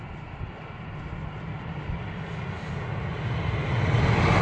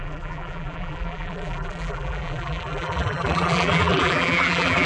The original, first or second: first